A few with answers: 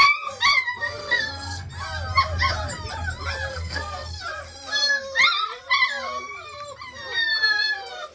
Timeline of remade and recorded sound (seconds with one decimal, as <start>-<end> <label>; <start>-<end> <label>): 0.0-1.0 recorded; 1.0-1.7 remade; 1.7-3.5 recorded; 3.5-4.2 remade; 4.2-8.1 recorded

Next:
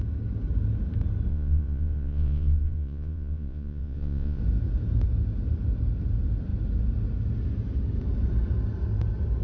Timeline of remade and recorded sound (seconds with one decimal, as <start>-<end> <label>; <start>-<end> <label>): 0.0-1.3 recorded; 1.3-4.4 remade; 4.4-9.4 recorded

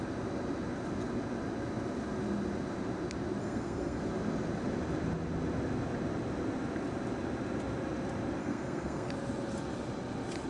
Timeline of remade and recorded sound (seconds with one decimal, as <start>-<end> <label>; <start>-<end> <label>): 0.0-3.4 recorded; 3.4-4.0 remade; 4.0-8.4 recorded; 8.4-9.1 remade; 9.1-10.5 recorded